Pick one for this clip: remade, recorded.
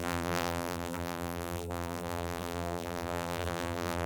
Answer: remade